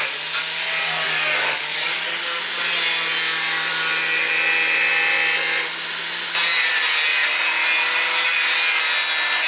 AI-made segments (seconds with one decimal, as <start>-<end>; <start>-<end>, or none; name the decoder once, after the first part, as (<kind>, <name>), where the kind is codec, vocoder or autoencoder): 0.8-2.4 (codec, DAC)